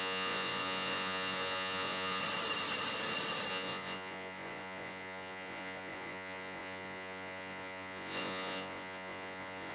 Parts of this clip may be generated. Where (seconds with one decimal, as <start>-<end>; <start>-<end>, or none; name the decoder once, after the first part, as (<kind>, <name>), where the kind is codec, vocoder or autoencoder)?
0.0-2.2 (vocoder, Vocos); 3.5-9.7